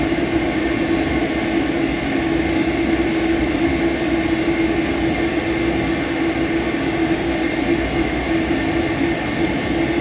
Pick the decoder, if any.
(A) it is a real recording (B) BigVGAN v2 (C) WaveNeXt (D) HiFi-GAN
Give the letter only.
A